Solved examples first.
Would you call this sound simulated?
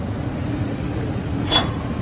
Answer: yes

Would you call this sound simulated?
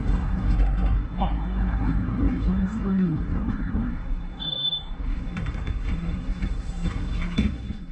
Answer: yes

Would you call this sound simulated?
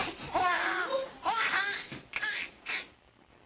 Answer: no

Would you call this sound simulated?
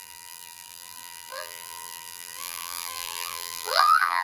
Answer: yes